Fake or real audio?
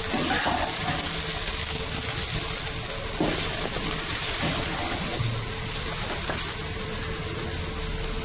real